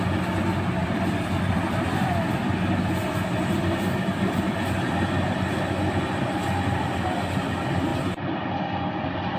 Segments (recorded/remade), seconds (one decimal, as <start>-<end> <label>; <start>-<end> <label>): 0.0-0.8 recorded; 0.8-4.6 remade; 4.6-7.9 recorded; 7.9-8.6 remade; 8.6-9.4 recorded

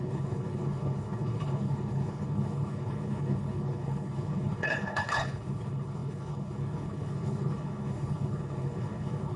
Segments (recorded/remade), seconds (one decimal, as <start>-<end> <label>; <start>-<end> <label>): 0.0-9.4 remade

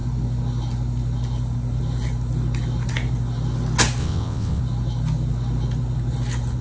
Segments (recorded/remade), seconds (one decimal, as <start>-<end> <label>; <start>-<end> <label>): 0.0-4.0 recorded; 4.0-4.6 remade; 4.6-6.6 recorded